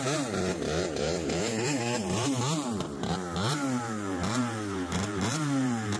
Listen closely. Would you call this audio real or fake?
fake